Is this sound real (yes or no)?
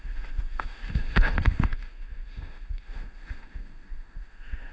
no